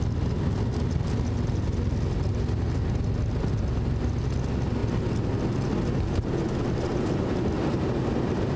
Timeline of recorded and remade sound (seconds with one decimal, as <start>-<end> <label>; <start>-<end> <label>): 0.0-6.9 recorded; 6.9-7.5 remade; 7.5-8.6 recorded